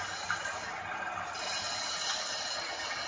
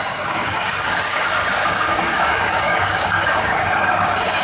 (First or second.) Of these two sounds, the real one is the first